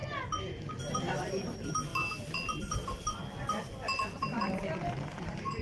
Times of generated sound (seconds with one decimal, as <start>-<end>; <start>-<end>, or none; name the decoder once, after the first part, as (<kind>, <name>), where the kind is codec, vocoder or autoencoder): 0.0-1.9 (vocoder, BigVGAN v2); 2.6-3.2; 4.2-5.6